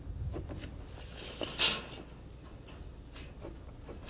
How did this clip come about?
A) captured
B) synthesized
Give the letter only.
A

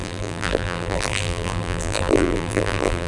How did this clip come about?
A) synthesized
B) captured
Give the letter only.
A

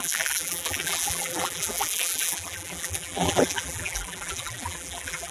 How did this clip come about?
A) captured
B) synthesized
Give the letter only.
B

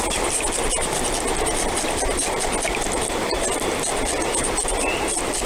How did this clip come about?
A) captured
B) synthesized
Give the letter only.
A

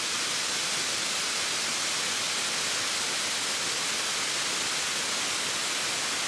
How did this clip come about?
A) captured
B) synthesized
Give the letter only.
A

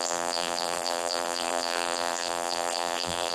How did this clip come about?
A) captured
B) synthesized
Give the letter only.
B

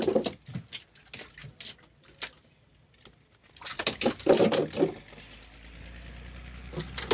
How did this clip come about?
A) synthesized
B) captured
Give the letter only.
B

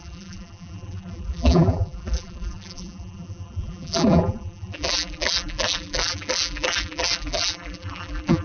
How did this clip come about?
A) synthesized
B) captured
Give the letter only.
A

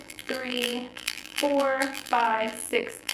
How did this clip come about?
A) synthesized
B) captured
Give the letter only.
A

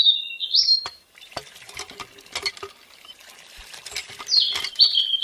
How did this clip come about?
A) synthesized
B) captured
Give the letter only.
B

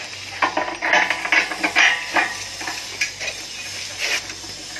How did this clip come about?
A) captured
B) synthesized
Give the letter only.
A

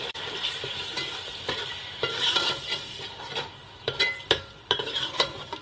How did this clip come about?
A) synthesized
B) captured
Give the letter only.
A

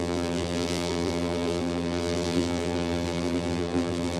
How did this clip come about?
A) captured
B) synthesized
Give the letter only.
B